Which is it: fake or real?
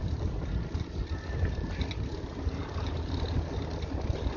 real